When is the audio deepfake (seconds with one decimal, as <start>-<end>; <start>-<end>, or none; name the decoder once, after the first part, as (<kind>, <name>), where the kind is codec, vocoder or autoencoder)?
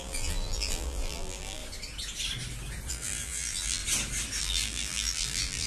0.0-1.6 (vocoder, BigVGAN v2); 2.9-3.8; 4.4-5.7